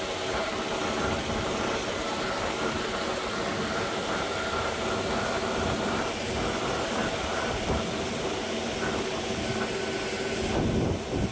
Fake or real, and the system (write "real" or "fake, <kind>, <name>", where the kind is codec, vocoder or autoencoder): real